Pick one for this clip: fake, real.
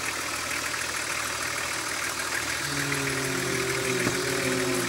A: real